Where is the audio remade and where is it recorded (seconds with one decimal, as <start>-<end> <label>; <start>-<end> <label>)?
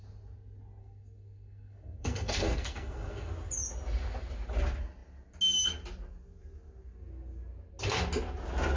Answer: 0.0-0.8 recorded; 0.8-3.3 remade; 3.3-8.8 recorded